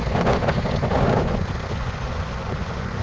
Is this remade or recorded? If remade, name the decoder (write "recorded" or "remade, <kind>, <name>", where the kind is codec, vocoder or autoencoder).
remade, vocoder, Vocos